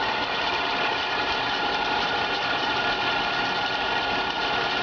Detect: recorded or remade remade